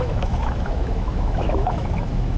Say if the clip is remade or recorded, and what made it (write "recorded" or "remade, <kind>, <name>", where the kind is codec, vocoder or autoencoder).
remade, autoencoder, DAC-VAE